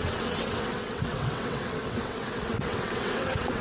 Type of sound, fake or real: fake